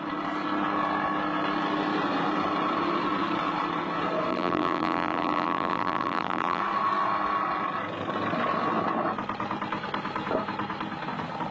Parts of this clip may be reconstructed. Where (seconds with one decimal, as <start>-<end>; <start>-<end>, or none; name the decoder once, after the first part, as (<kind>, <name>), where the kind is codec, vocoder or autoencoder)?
4.3-6.6 (vocoder, BigVGAN v2)